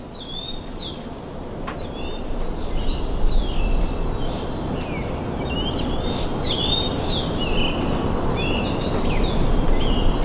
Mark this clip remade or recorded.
recorded